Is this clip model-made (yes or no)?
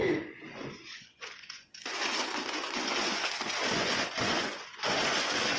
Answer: yes